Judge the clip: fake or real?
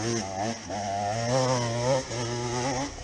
real